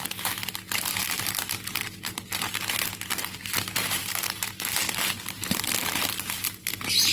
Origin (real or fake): real